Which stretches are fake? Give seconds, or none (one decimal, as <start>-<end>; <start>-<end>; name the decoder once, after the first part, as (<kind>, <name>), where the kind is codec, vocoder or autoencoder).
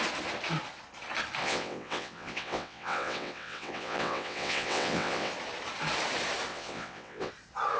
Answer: 1.4-5.3 (vocoder, WaveNeXt); 6.5-7.3